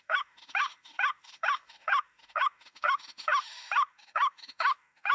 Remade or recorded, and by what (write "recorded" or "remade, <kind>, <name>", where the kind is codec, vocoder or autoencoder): remade, autoencoder, DAC-VAE